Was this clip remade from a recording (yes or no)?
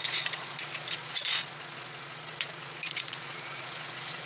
yes